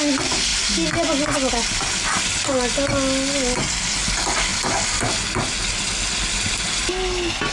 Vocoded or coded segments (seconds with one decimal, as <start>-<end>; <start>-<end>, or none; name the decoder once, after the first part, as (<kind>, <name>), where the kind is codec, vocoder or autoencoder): none